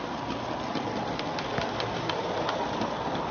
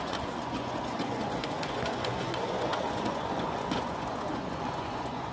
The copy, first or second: second